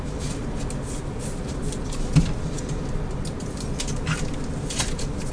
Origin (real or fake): real